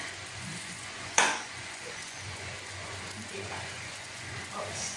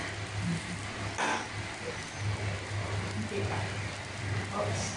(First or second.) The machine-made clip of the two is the first